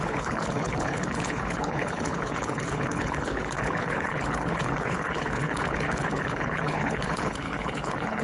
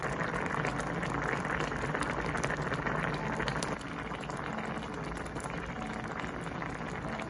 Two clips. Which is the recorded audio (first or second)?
second